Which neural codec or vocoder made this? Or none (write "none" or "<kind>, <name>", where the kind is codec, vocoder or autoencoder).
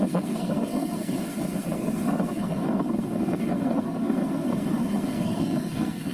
codec, SNAC